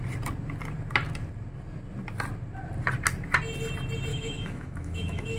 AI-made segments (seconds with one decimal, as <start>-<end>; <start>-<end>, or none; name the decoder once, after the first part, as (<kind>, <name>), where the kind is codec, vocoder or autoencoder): 4.1-5.4 (autoencoder, DAC-VAE)